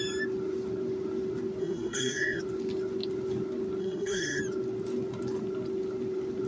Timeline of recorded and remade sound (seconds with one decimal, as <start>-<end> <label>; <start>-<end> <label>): 0.0-1.6 recorded; 1.6-2.4 remade; 2.4-3.8 recorded; 3.8-4.4 remade; 4.4-6.5 recorded